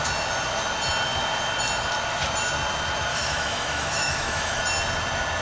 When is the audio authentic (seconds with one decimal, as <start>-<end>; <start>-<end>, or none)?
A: 0.0-3.1; 4.6-5.4